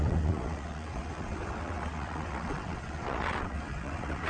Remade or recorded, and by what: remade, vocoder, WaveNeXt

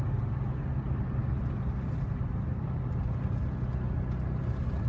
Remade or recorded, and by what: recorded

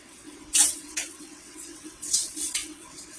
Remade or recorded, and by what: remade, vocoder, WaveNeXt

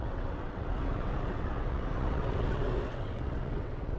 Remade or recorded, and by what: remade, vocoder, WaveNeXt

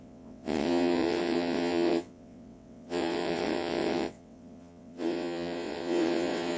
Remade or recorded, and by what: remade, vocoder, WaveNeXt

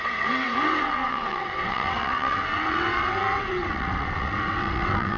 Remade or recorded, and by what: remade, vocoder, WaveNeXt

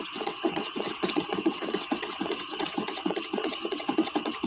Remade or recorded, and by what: remade, vocoder, WaveNeXt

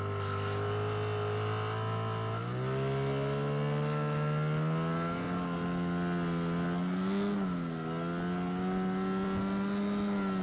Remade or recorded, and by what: recorded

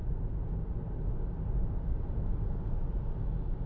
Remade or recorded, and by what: recorded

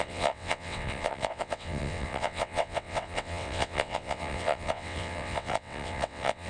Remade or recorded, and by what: remade, vocoder, WaveNeXt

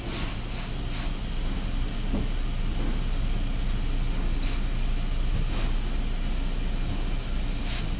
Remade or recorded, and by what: recorded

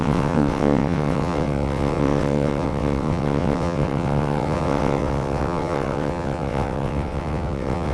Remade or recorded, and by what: remade, vocoder, WaveNeXt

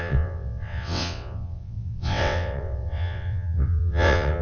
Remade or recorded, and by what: remade, vocoder, WaveNeXt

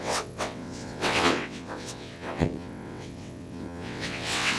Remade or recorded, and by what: remade, vocoder, WaveNeXt